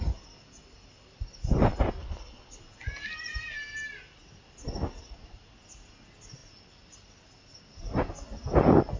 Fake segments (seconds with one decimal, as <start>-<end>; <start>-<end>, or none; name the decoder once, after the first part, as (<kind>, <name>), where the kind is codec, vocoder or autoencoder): 2.0-2.6 (codec, HILCodec)